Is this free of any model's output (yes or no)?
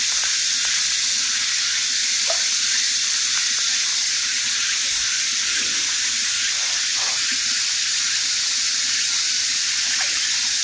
yes